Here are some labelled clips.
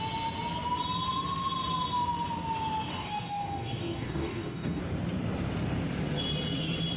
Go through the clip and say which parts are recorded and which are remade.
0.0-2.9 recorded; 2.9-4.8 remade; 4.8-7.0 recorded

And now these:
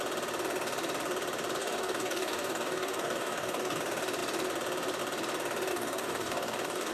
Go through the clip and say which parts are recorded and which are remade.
0.0-1.6 recorded; 1.6-3.8 remade; 3.8-5.7 recorded; 5.7-6.9 remade